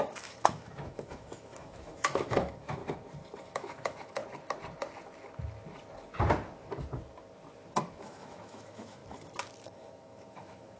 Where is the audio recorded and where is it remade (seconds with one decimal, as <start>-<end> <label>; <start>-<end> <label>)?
0.0-2.8 remade; 2.8-3.4 recorded; 3.4-4.2 remade; 4.2-8.0 recorded; 8.0-9.0 remade; 9.0-9.6 recorded; 9.6-10.8 remade